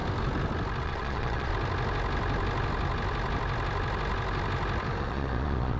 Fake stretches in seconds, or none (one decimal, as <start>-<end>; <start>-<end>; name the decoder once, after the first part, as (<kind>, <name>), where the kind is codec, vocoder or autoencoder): 0.8-1.5 (vocoder, Vocos); 5.0-5.8